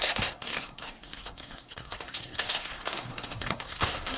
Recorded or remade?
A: remade